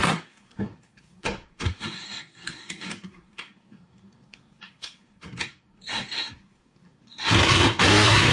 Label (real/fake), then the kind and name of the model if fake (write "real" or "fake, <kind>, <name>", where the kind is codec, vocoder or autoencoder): fake, codec, SNAC